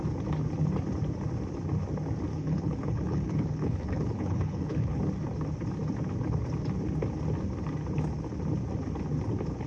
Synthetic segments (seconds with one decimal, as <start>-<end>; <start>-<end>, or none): 2.3-5.0